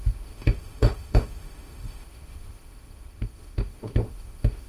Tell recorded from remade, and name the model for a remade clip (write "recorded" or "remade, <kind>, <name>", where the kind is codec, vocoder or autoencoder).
remade, autoencoder, DAC-VAE